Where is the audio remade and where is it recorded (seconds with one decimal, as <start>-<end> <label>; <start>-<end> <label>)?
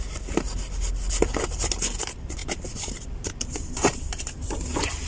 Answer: 0.0-5.1 recorded